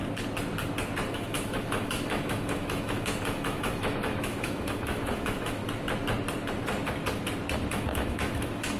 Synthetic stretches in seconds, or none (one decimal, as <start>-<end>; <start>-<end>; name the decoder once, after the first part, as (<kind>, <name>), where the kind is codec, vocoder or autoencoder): 1.1-5.6 (autoencoder, DAC-VAE); 7.7-8.8